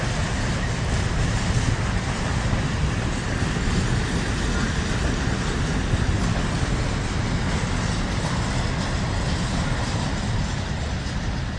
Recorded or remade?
recorded